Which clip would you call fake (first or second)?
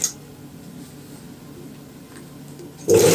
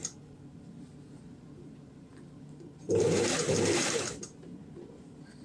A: second